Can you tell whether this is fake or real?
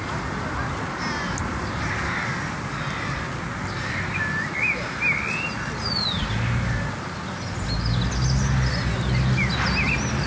real